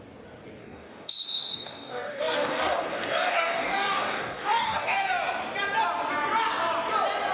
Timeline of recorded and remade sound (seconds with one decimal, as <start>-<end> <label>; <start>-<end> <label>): 0.0-0.6 recorded; 0.6-5.0 remade; 5.0-7.3 recorded